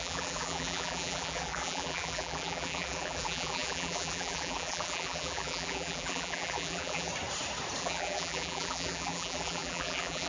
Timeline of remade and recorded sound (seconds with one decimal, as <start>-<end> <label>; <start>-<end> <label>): 0.0-7.1 remade; 7.1-7.8 recorded; 7.8-10.3 remade